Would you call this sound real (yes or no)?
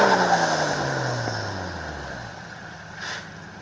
yes